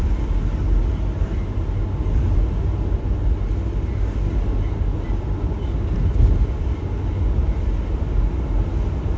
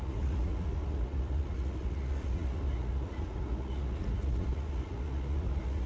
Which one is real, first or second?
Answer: first